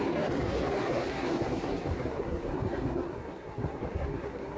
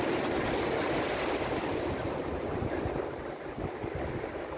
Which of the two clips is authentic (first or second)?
second